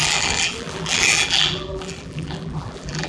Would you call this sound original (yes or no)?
no